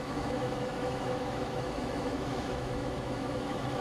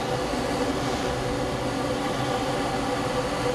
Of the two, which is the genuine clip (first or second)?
second